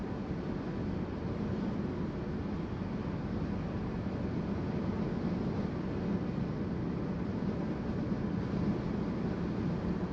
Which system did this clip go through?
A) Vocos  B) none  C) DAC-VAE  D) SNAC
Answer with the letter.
B